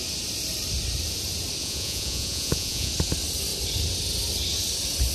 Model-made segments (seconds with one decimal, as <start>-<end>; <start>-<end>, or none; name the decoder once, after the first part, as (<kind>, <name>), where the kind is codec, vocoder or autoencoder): 1.6-2.9 (vocoder, Vocos)